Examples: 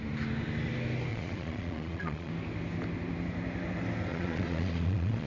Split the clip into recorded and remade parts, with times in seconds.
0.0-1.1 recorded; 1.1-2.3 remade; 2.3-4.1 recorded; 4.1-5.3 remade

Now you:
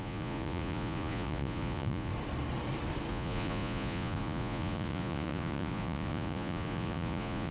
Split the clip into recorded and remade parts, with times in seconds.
0.0-2.1 remade; 2.1-3.1 recorded; 3.1-7.5 remade

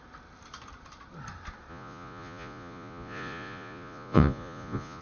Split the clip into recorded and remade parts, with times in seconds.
0.0-1.7 recorded; 1.7-5.0 remade